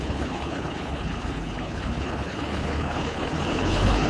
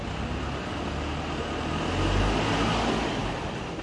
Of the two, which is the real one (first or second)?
second